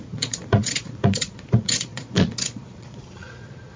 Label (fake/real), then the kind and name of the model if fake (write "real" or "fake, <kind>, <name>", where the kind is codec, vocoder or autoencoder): fake, vocoder, Vocos